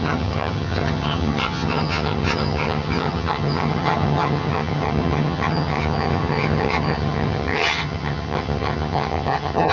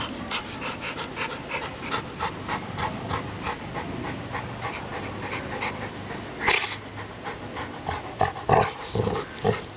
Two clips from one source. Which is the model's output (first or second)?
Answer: first